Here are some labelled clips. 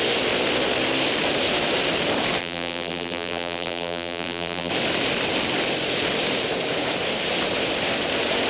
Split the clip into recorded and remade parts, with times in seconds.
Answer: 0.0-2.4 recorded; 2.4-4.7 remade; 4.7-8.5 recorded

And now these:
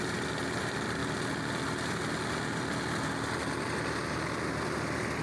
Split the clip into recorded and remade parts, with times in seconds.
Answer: 0.0-5.2 recorded

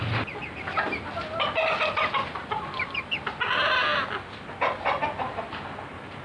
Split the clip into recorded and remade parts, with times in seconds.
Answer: 0.0-6.2 recorded

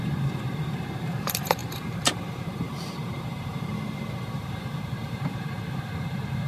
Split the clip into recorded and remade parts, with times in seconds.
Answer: 0.0-6.5 remade

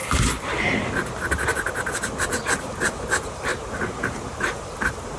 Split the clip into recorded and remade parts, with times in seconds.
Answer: 0.0-3.1 recorded; 3.1-5.2 remade

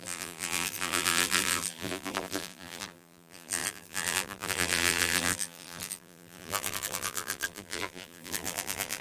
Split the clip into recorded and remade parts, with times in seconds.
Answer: 0.0-9.0 remade

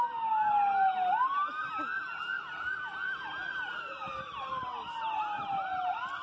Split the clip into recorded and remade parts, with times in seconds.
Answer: 0.0-6.2 recorded